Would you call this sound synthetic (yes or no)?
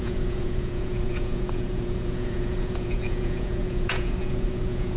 yes